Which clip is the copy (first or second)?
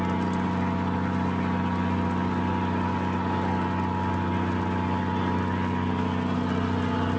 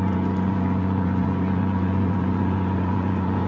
second